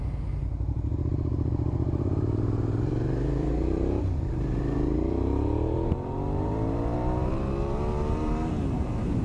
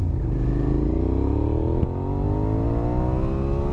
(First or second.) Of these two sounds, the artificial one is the first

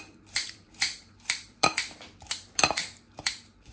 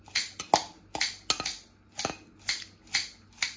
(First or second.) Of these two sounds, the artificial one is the first